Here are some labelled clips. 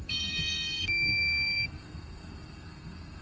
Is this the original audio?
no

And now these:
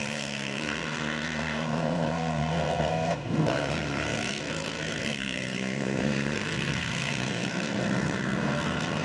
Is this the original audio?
no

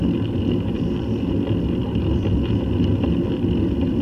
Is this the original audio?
yes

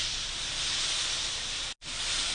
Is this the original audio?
yes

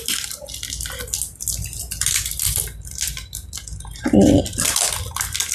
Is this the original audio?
yes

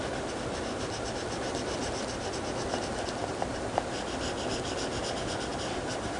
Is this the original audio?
yes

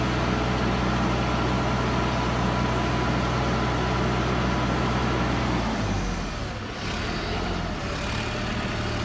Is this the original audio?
yes